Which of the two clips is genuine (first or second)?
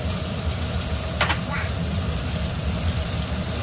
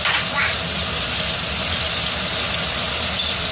second